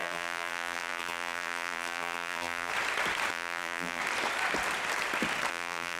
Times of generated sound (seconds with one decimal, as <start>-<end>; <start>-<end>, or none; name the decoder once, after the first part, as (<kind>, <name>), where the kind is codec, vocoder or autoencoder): 0.0-2.7 (vocoder, BigVGAN v2); 3.3-4.0; 5.5-6.0